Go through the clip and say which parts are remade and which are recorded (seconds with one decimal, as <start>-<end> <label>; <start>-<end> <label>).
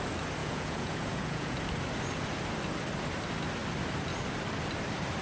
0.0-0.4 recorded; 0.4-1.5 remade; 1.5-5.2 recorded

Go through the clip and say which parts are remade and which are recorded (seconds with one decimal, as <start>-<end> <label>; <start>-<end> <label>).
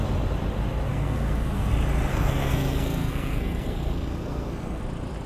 0.0-0.9 recorded; 0.9-1.7 remade; 1.7-2.1 recorded; 2.1-4.8 remade; 4.8-5.3 recorded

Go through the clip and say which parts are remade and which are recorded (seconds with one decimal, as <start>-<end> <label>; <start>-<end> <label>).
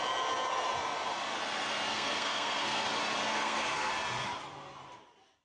0.0-1.9 recorded; 1.9-2.9 remade; 2.9-3.3 recorded; 3.3-3.9 remade; 3.9-5.4 recorded